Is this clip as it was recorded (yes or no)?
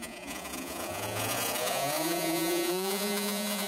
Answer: no